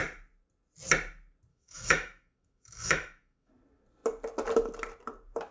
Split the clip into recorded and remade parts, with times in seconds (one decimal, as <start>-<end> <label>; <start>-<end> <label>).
0.0-1.5 recorded; 1.5-3.5 remade; 3.5-5.5 recorded